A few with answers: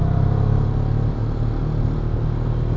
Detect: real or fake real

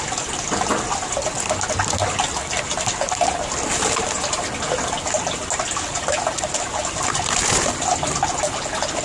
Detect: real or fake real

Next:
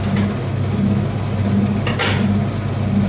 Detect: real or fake real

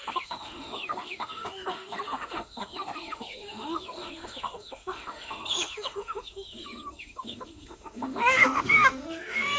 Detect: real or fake fake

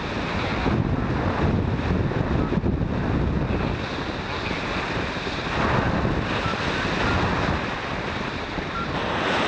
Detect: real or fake real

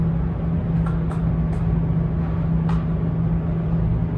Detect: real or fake real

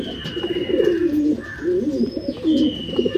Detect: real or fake real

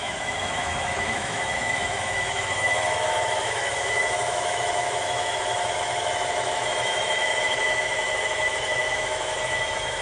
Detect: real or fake fake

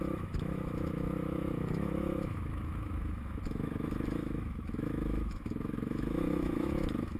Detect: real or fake fake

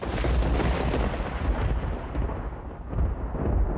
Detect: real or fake real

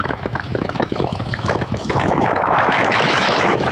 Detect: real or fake fake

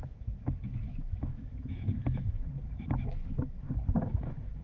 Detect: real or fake fake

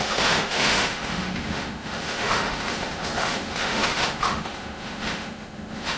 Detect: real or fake fake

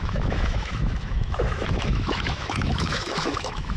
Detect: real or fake fake